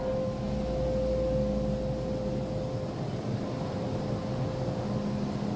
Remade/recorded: recorded